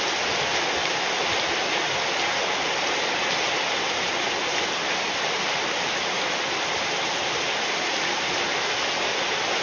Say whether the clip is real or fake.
real